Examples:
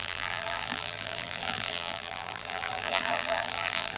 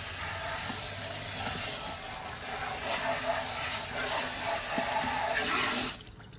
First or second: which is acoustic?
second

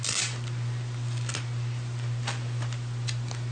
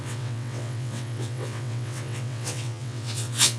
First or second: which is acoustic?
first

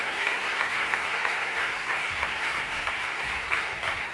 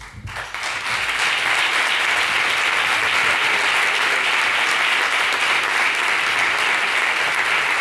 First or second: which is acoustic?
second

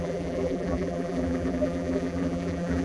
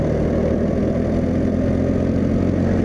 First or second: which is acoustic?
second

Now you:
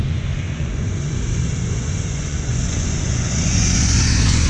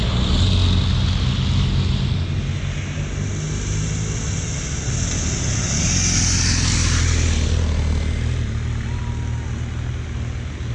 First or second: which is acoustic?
second